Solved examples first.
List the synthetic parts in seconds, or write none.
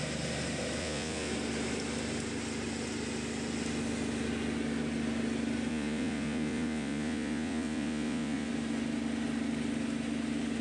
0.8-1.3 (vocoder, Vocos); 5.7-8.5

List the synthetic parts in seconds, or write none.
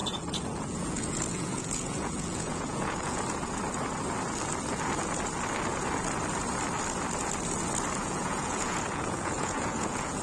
0.0-3.2 (vocoder, Vocos); 8.0-10.2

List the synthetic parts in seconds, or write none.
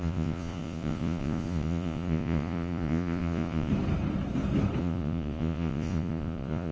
0.0-3.7 (vocoder, Vocos); 4.8-6.7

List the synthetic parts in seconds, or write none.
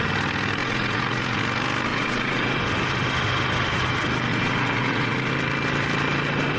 0.6-1.4 (vocoder, Vocos); 1.9-2.5; 4.3-5.3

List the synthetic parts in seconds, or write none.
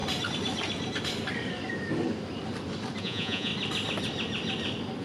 3.0-3.5 (vocoder, Vocos)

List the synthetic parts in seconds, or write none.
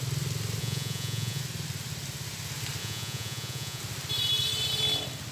0.6-1.4 (vocoder, Vocos); 2.8-3.8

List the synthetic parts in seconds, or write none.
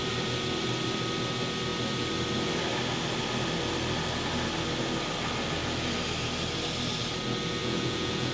7.6-8.3 (vocoder, Vocos)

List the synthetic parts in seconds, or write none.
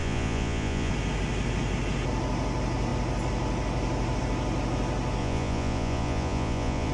0.0-0.9 (vocoder, Vocos); 5.2-6.9